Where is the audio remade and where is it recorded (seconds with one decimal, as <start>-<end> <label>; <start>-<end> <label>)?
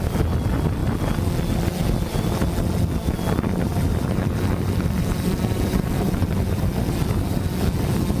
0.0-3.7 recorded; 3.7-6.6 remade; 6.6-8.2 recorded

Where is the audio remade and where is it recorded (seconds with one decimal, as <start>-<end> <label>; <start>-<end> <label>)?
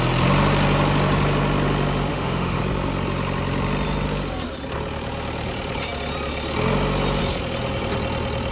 0.0-2.1 recorded; 2.1-2.6 remade; 2.6-8.5 recorded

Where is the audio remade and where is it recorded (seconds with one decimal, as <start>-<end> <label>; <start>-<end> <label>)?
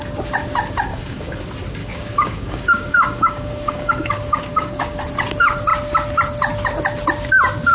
0.0-0.9 recorded; 0.9-1.4 remade; 1.4-1.8 recorded; 1.8-5.0 remade; 5.0-7.7 recorded